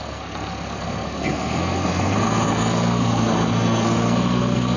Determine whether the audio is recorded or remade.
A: remade